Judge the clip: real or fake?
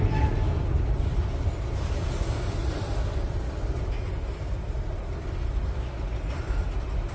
real